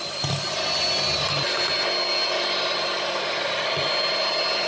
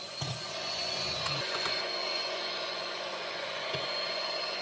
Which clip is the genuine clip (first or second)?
first